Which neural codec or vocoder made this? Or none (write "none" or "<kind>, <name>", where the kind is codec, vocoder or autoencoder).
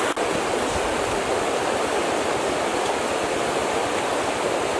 none